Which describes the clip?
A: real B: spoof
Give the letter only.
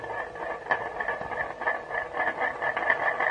A